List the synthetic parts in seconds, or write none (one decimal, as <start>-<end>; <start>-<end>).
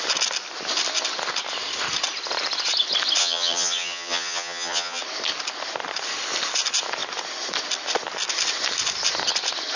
3.2-5.0